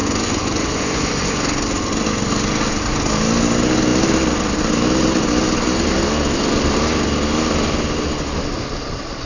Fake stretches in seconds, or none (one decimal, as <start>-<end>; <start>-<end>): 0.0-1.4